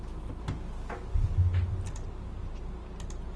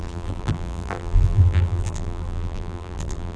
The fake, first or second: second